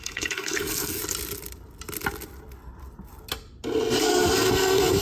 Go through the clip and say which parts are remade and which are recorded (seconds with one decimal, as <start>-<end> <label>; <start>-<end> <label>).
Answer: 0.0-1.0 remade; 1.0-4.0 recorded; 4.0-5.0 remade